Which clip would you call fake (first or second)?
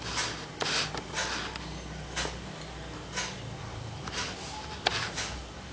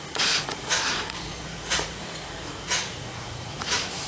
second